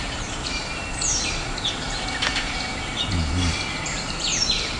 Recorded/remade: remade